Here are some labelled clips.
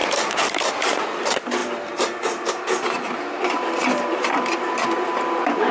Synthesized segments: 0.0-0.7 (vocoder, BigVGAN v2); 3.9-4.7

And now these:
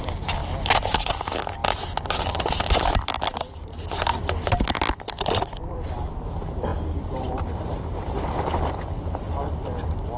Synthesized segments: 0.0-0.4 (vocoder, BigVGAN v2); 1.1-1.6; 2.3-10.2